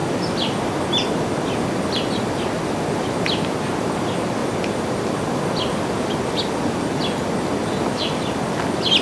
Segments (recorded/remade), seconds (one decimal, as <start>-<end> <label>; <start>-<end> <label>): 0.0-9.0 recorded